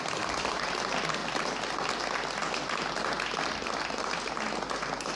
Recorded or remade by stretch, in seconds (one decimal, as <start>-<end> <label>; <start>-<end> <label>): 0.0-5.2 recorded